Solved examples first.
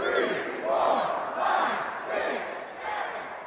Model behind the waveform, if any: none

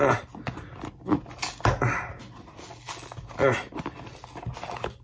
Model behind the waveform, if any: none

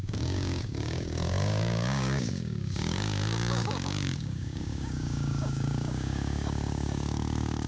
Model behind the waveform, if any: codec, DAC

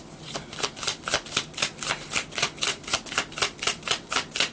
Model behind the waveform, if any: none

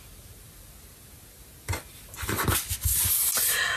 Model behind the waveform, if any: none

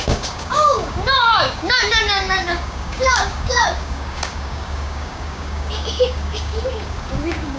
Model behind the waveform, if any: codec, DAC